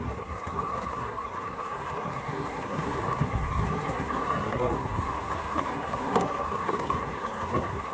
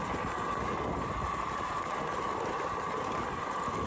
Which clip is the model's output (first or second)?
first